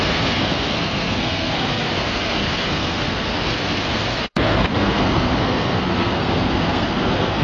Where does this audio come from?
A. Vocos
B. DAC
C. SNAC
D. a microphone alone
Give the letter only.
C